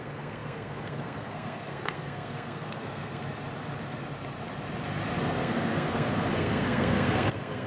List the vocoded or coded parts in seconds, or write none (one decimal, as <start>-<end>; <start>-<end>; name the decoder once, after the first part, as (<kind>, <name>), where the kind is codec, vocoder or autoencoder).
0.0-3.2 (codec, SNAC); 5.2-7.7